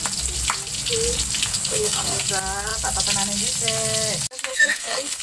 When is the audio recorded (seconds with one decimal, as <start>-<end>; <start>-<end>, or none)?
0.0-1.5; 2.3-4.5